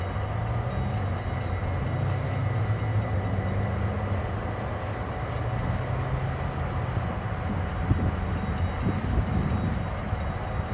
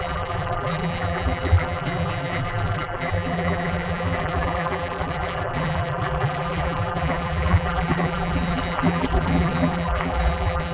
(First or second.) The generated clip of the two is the second